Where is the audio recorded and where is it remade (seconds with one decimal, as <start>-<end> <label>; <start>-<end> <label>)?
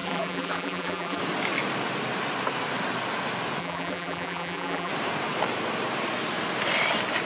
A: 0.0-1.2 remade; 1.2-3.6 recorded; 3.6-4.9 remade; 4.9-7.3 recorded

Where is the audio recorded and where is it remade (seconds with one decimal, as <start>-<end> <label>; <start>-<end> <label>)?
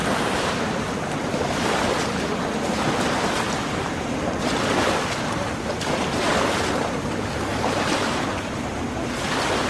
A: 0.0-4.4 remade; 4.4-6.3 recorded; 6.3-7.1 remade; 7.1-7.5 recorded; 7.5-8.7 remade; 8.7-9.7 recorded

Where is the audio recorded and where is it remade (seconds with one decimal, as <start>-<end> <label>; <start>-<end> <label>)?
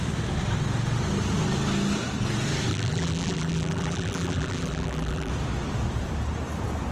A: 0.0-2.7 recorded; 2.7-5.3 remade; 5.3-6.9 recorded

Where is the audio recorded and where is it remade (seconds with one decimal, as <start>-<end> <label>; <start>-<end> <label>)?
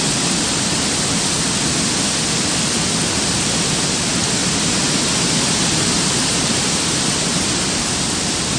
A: 0.0-4.4 recorded; 4.4-8.1 remade; 8.1-8.6 recorded